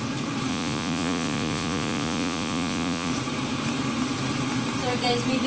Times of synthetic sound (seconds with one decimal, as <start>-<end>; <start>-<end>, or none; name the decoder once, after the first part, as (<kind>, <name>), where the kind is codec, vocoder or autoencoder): 0.5-3.1 (vocoder, Vocos)

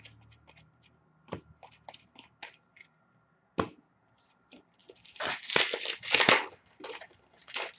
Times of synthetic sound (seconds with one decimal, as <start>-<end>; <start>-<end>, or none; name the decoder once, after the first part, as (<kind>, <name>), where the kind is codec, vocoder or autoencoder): none

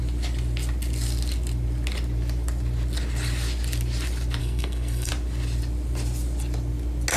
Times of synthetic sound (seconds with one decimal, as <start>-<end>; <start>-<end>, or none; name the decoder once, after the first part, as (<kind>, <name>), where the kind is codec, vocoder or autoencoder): 4.4-5.1 (codec, SNAC)

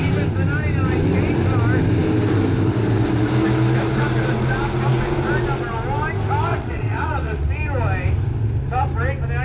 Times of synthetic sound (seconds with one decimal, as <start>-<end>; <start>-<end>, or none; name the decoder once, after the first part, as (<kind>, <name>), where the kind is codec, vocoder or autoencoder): 6.5-7.5 (vocoder, WaveNeXt)